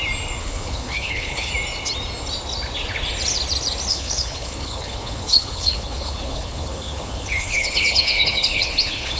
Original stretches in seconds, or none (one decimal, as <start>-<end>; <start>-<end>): 0.0-0.4; 1.5-3.9